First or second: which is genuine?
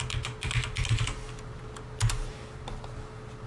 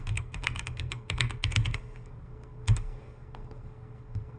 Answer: first